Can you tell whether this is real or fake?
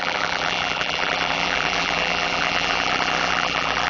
fake